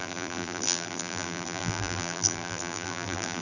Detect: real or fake fake